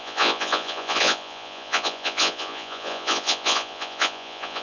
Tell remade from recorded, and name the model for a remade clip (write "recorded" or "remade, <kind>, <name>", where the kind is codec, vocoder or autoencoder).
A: remade, vocoder, Vocos